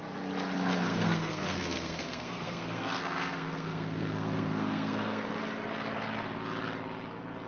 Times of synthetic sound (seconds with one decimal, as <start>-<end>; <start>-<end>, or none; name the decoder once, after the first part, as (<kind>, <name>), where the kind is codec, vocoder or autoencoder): 0.9-5.2 (codec, SNAC)